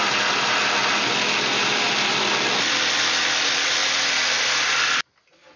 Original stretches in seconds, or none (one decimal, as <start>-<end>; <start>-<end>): 0.0-5.6